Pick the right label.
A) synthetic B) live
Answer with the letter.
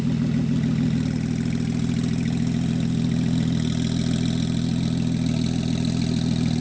B